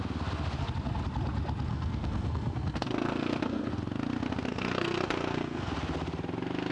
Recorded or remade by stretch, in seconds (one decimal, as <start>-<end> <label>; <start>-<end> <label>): 0.0-1.7 recorded; 1.7-3.7 remade; 3.7-4.5 recorded; 4.5-5.7 remade; 5.7-6.7 recorded